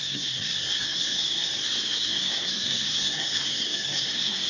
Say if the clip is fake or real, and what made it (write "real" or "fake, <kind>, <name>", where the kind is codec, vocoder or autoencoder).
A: fake, codec, SNAC